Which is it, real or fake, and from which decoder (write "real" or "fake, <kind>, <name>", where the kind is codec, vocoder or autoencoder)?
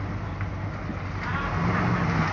real